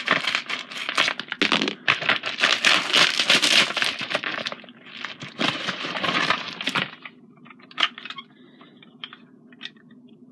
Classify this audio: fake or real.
real